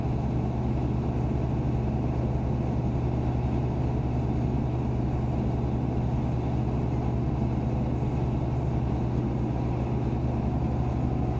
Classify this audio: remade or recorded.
recorded